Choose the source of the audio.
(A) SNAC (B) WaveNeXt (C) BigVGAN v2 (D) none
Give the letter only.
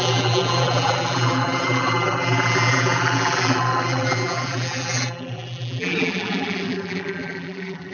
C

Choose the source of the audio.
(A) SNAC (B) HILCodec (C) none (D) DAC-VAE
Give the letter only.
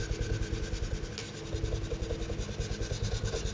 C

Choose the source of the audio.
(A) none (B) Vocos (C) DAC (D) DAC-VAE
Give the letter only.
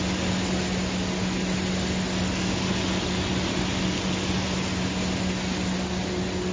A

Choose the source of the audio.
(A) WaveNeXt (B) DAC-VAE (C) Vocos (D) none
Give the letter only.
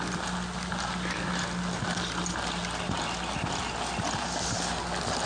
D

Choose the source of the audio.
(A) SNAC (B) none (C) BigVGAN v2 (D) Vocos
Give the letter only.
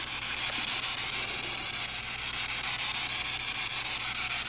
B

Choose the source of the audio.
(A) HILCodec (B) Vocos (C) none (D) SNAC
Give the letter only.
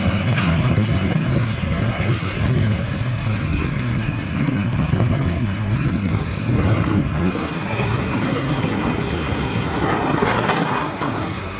D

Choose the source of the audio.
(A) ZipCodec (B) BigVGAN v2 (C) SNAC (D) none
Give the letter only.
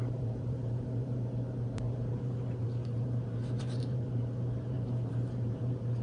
B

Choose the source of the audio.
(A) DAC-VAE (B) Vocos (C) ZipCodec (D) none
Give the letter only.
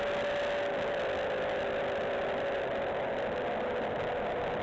D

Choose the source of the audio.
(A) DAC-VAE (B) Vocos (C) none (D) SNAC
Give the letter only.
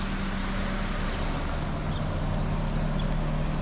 C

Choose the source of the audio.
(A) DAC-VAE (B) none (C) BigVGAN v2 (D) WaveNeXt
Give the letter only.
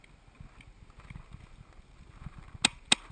B